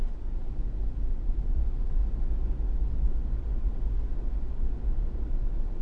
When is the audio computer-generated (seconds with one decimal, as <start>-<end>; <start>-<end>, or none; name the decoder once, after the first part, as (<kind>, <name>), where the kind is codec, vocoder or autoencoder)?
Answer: 0.0-0.6 (vocoder, BigVGAN v2); 1.4-2.0; 5.0-5.8